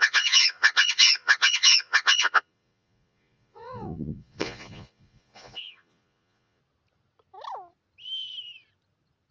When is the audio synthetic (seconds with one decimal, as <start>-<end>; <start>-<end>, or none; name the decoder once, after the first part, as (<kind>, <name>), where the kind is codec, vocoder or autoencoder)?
0.0-6.6 (vocoder, Vocos)